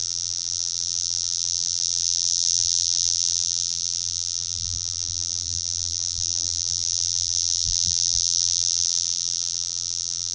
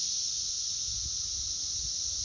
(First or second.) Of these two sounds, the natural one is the second